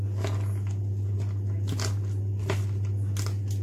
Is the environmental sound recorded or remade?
recorded